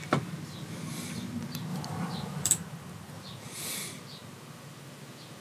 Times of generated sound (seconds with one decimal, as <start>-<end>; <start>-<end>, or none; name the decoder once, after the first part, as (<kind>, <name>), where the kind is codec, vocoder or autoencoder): 1.7-2.5 (vocoder, BigVGAN v2)